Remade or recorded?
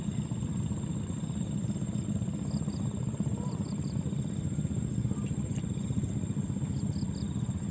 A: recorded